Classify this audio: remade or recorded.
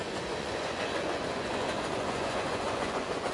remade